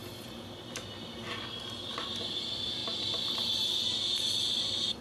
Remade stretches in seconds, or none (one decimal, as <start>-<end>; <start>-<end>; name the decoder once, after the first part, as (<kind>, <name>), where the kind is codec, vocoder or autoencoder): 2.3-2.8 (vocoder, BigVGAN v2); 4.6-5.0